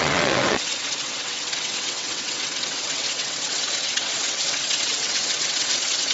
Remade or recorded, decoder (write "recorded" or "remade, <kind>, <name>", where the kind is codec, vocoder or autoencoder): remade, vocoder, WaveNeXt